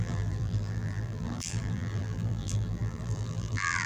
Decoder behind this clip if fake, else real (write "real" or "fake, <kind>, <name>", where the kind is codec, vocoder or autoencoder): fake, vocoder, BigVGAN v2